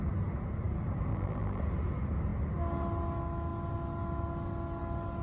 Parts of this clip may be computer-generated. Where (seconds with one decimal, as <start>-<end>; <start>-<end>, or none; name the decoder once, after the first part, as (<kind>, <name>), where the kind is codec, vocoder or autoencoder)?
1.1-1.6 (vocoder, BigVGAN v2)